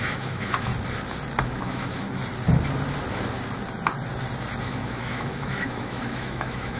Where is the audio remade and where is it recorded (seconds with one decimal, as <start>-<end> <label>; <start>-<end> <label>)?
0.0-0.7 remade; 0.7-1.4 recorded; 1.4-2.2 remade; 2.2-4.6 recorded; 4.6-6.8 remade